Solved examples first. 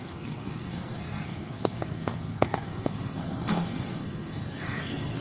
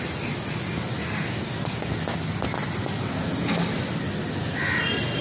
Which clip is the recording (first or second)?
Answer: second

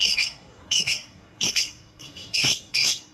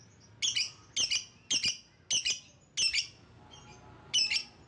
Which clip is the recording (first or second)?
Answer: second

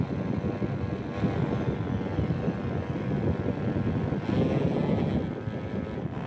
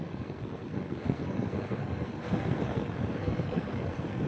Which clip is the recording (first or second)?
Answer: first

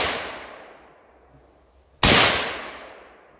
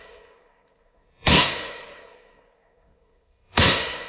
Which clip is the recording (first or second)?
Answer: first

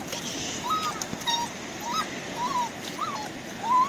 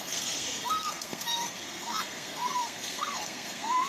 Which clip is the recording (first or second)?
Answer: first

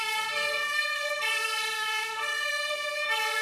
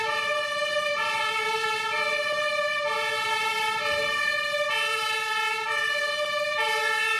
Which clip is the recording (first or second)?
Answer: second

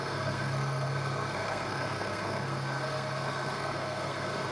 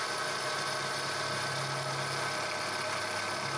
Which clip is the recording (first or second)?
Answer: second